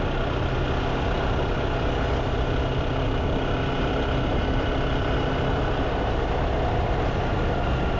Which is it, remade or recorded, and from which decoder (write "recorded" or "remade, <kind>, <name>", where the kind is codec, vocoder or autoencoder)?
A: recorded